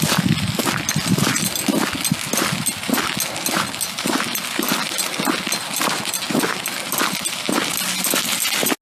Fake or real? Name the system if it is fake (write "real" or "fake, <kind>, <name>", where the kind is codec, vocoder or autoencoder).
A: real